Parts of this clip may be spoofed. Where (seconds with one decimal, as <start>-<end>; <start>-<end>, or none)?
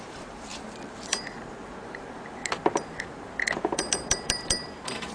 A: 0.0-5.1